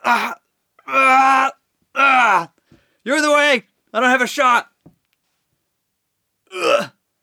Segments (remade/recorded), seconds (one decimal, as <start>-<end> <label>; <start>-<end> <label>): 0.0-7.2 recorded